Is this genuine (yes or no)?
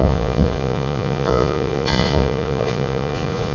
no